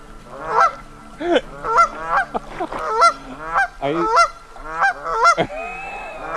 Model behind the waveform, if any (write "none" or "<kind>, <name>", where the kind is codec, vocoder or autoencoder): none